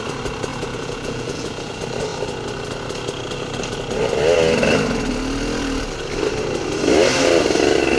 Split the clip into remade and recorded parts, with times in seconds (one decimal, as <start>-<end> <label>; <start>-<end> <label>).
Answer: 0.0-0.5 recorded; 0.5-1.7 remade; 1.7-8.0 recorded